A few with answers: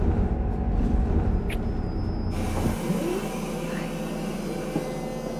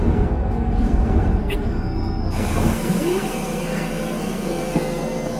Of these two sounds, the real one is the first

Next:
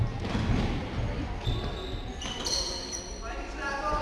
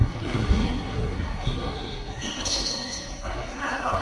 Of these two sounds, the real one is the first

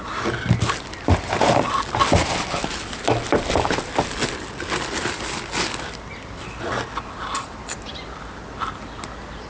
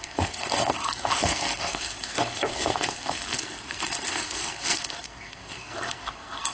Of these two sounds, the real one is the first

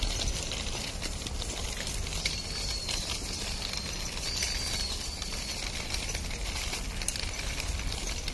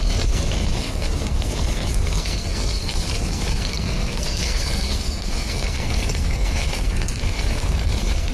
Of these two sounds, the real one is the first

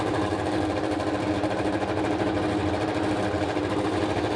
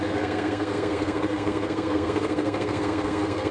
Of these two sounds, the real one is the first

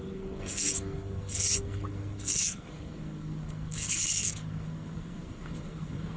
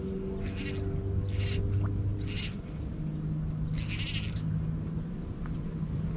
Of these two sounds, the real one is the second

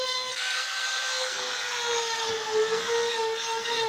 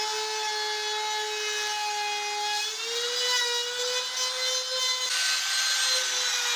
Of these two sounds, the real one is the second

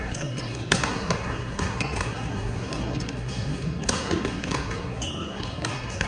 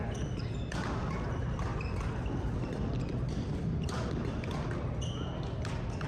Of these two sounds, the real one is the second